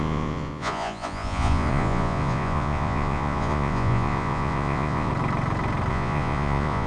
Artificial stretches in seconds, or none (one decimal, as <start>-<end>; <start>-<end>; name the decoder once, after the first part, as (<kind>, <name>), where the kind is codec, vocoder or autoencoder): 0.0-5.1 (vocoder, Vocos); 5.9-6.9